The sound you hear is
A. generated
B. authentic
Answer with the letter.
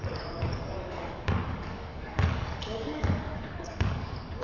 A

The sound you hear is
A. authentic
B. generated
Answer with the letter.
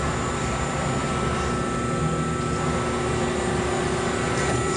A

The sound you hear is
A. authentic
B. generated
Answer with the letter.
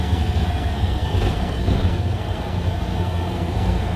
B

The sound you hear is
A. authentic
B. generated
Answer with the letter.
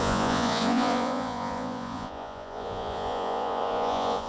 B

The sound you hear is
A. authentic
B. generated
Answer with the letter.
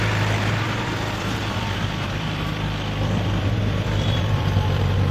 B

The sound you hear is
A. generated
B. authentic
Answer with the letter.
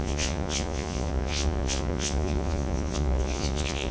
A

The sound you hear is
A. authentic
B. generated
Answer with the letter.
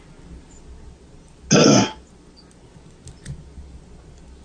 A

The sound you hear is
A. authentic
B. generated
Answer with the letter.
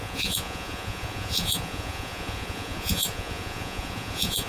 B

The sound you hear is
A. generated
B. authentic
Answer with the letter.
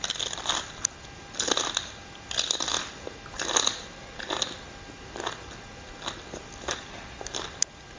B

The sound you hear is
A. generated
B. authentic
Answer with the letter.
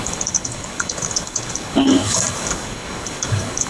A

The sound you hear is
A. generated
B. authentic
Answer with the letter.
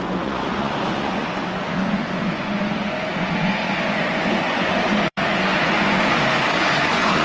A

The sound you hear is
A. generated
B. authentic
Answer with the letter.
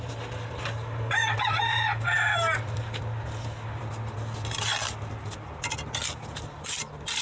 B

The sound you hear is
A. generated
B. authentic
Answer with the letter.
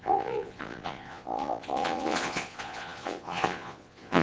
A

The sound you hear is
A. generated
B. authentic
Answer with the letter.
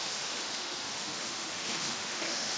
A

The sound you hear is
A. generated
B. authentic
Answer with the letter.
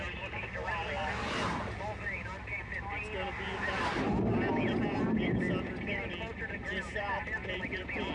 B